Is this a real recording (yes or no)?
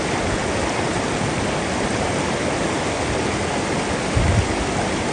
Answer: yes